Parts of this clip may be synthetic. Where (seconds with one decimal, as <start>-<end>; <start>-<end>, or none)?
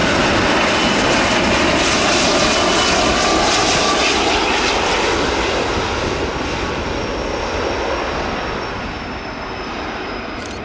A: none